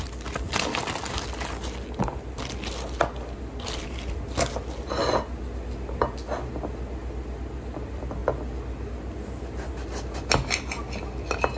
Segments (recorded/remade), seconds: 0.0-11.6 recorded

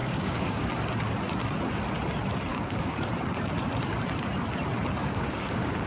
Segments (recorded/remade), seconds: 0.0-0.7 remade; 0.7-2.5 recorded; 2.5-3.1 remade; 3.1-5.0 recorded; 5.0-5.9 remade

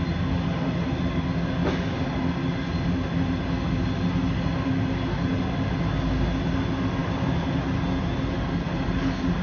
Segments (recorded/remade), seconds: 0.0-9.4 recorded